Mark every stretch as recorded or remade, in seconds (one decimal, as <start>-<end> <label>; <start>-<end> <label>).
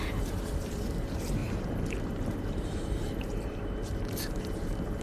0.0-5.0 remade